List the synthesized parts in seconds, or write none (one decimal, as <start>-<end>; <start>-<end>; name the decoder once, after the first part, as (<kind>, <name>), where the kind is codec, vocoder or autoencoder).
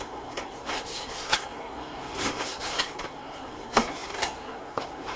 0.0-5.2 (codec, SNAC)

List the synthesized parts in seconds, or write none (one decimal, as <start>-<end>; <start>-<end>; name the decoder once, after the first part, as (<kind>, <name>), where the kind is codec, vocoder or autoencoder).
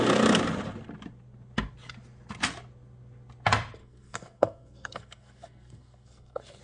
3.8-6.6 (codec, SNAC)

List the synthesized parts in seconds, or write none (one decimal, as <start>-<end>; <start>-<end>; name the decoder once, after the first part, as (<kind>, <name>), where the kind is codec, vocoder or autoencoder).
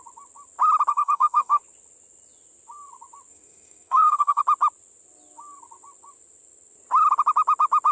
0.9-1.6 (codec, SNAC); 3.3-4.4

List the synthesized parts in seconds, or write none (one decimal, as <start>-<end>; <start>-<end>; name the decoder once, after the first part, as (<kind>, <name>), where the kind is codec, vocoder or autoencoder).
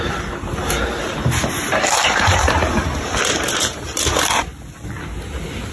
0.0-4.5 (vocoder, BigVGAN v2)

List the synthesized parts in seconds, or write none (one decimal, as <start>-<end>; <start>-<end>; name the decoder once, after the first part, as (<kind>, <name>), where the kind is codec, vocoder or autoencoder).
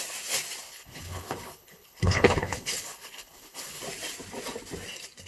0.6-3.8 (codec, HILCodec)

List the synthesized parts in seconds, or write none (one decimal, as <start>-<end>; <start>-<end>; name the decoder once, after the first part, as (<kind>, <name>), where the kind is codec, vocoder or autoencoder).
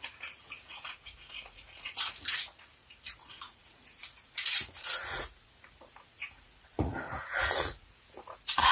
0.0-8.7 (vocoder, Vocos)